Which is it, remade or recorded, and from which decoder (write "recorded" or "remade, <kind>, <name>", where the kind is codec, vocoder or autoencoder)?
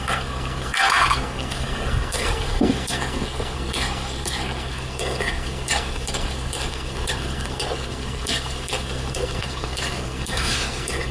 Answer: remade, codec, SNAC